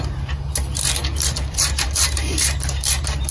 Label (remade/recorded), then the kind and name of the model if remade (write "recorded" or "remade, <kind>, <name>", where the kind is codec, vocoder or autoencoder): remade, vocoder, BigVGAN v2